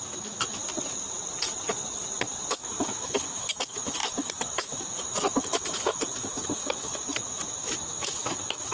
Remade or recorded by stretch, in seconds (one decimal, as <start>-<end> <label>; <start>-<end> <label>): 0.0-0.6 remade; 0.6-2.5 recorded; 2.5-8.7 remade